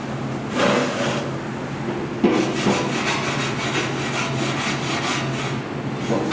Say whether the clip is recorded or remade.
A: recorded